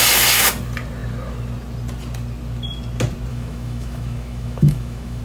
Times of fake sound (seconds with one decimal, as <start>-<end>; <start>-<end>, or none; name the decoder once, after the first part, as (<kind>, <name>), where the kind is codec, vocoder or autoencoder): 3.3-5.2 (autoencoder, DAC-VAE)